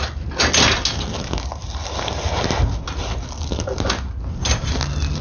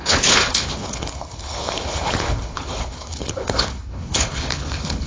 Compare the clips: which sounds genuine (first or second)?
first